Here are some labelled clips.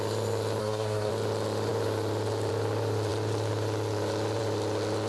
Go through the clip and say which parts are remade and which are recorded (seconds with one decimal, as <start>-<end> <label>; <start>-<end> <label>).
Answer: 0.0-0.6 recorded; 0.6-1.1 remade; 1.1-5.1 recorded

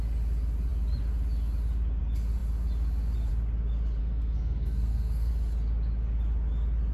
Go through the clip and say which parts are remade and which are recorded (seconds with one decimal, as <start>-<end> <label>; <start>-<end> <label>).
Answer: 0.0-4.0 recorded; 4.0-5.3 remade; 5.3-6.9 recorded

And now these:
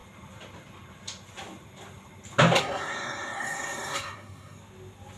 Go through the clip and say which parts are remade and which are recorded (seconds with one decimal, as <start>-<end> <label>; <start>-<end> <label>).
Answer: 0.0-2.6 recorded; 2.6-4.6 remade; 4.6-5.2 recorded

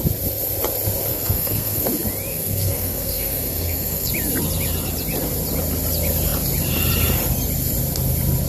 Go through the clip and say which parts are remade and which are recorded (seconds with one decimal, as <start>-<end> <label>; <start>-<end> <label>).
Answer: 0.0-1.1 recorded; 1.1-1.8 remade; 1.8-2.3 recorded; 2.3-4.1 remade; 4.1-8.5 recorded

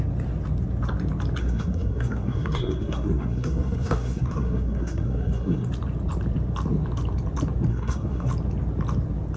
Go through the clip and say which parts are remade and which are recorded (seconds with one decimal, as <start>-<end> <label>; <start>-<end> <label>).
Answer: 0.0-1.4 recorded; 1.4-5.7 remade; 5.7-7.7 recorded; 7.7-8.3 remade; 8.3-9.4 recorded